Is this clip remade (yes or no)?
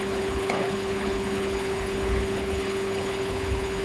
yes